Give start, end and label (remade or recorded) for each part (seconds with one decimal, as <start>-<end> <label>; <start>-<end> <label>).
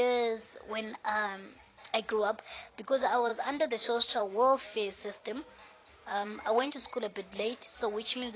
0.0-3.3 recorded; 3.3-4.2 remade; 4.2-5.8 recorded; 5.8-6.7 remade; 6.7-8.4 recorded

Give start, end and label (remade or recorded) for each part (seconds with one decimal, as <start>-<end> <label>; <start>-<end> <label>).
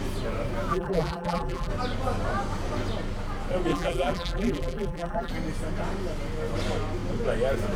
0.0-0.7 recorded; 0.7-1.7 remade; 1.7-3.7 recorded; 3.7-5.3 remade; 5.3-7.8 recorded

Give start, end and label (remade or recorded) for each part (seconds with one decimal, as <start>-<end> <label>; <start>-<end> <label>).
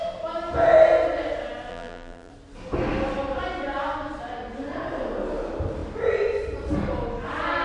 0.0-1.7 recorded; 1.7-2.3 remade; 2.3-7.6 recorded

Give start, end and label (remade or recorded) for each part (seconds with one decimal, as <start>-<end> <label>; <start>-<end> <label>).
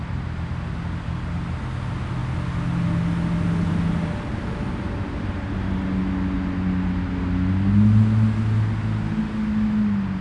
0.0-10.2 recorded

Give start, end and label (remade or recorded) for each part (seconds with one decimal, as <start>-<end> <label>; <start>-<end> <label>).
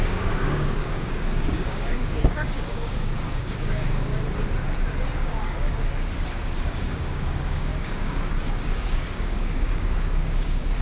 0.0-4.1 remade; 4.1-5.2 recorded; 5.2-10.8 remade